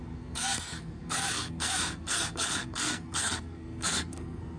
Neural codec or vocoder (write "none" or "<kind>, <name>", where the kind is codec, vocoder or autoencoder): codec, SNAC